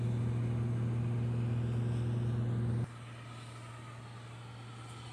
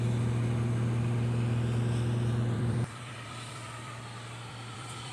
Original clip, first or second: first